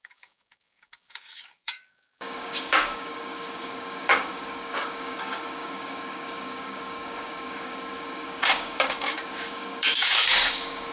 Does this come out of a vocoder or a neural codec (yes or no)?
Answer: yes